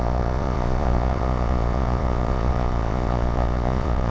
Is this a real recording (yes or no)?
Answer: no